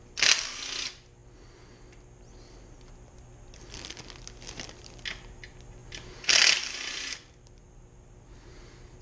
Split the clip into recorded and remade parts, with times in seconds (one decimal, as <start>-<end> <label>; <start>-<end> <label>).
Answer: 0.0-9.0 recorded